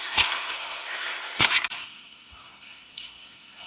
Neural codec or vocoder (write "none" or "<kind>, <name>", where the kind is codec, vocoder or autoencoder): codec, SNAC